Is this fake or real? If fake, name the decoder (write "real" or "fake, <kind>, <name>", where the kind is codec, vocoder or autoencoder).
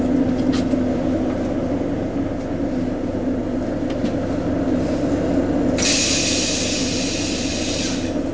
real